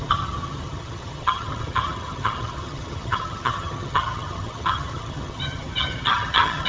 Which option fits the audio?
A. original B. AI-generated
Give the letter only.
B